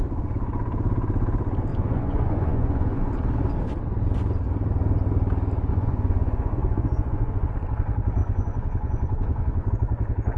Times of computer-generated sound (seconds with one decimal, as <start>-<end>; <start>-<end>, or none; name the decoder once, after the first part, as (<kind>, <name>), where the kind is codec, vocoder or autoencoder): 1.7-3.1 (vocoder, Vocos); 5.7-7.5; 8.2-9.7

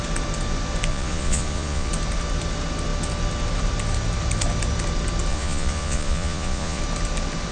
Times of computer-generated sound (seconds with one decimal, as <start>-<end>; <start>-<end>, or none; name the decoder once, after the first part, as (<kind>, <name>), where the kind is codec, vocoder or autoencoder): 0.9-1.9 (vocoder, Vocos); 5.3-6.8

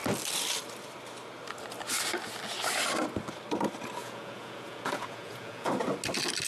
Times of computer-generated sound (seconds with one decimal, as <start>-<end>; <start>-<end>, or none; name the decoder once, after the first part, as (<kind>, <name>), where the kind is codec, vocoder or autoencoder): 4.0-5.7 (vocoder, Vocos)